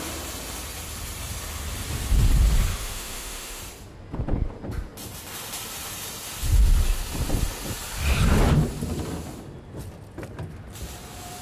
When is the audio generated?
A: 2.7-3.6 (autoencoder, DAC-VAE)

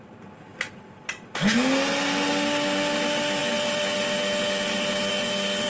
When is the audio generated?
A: none

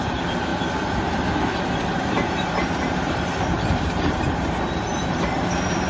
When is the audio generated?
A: 0.0-0.5 (vocoder, BigVGAN v2); 1.8-5.9

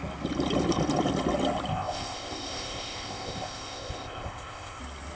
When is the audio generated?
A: 1.7-4.8 (codec, ZipCodec)

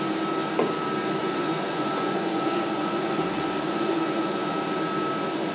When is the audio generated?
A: 1.2-4.5 (vocoder, Vocos)

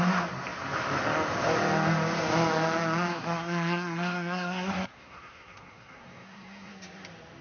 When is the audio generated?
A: 3.1-6.7 (codec, SNAC)

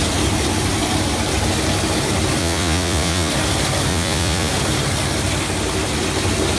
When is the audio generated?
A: 2.4-3.3 (vocoder, Vocos); 3.9-4.5